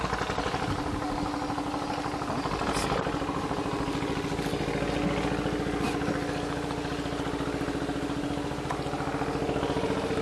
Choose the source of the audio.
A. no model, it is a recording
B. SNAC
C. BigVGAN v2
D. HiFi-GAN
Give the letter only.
A